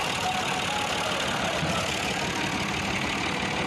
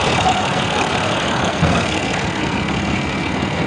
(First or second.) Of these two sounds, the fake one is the second